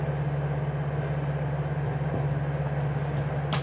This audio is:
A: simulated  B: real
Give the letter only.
B